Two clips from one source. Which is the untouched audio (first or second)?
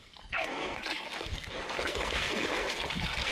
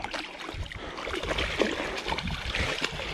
second